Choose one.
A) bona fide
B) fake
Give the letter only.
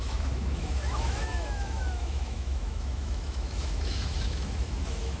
B